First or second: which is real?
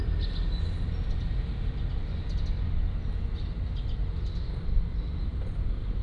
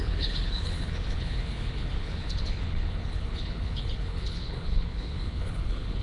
first